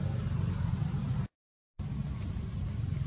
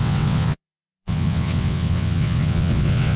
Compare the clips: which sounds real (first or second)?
first